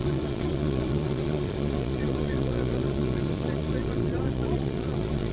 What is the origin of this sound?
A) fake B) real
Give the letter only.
A